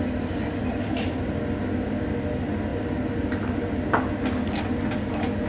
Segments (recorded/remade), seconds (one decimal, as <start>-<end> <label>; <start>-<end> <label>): 0.0-5.5 recorded